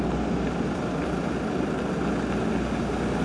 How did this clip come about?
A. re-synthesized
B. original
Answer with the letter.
B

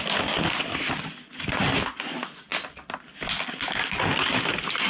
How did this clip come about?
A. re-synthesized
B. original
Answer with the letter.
B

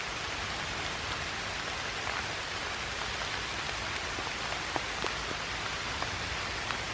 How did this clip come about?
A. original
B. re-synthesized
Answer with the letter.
A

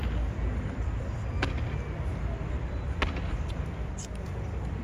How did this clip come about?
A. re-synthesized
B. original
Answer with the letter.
B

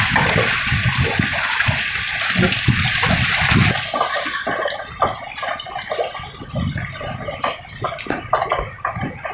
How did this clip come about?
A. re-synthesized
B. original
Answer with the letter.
B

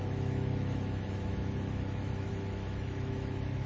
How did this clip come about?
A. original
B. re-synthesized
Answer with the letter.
B